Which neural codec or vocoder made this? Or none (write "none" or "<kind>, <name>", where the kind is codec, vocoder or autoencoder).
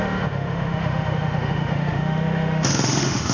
autoencoder, DAC-VAE